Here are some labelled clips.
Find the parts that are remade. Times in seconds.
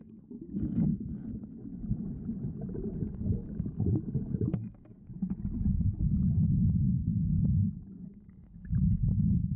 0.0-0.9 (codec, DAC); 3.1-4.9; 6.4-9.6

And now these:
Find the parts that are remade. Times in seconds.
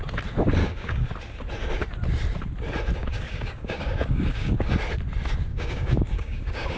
0.6-1.1 (codec, DAC); 3.0-4.7; 5.5-6.8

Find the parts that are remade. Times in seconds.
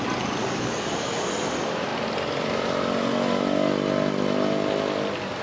0.4-1.3 (codec, DAC)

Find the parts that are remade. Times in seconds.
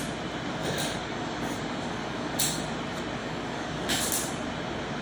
0.6-2.4 (codec, DAC); 3.2-4.1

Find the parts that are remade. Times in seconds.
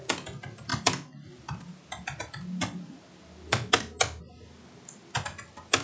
none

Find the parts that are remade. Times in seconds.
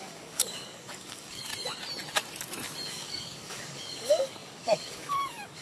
0.0-1.5 (codec, DAC); 2.9-5.6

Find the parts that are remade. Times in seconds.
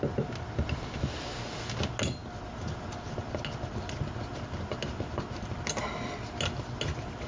none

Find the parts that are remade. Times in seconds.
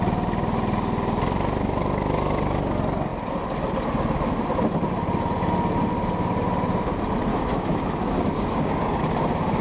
7.3-9.0 (codec, DAC)